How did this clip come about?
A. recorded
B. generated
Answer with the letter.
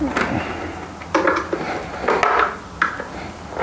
A